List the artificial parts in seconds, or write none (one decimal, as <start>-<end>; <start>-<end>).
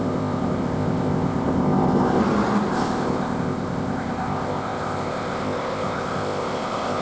0.0-2.2; 2.7-7.0